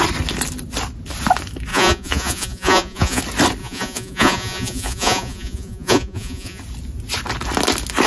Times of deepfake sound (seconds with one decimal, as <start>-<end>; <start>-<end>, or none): 1.7-3.2; 3.6-6.6

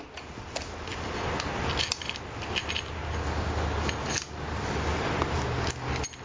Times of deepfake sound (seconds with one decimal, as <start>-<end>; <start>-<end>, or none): none

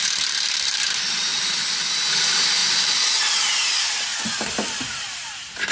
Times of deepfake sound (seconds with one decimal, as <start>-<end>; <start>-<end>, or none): 0.0-1.3; 2.1-4.1; 4.9-5.7

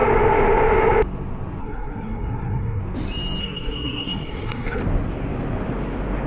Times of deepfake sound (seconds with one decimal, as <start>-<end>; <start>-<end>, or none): 1.6-2.8; 3.4-4.8